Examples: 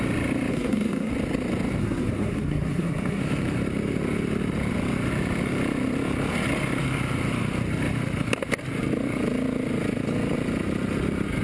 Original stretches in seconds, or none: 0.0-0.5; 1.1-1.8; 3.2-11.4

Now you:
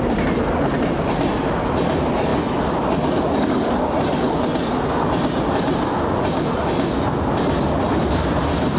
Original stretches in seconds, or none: 0.0-8.8

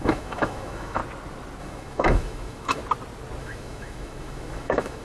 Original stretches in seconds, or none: 1.0-1.6; 2.8-3.4

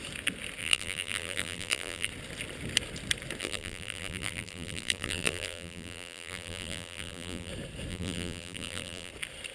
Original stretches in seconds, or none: 0.0-0.6; 2.1-3.4; 7.5-7.9; 9.1-9.5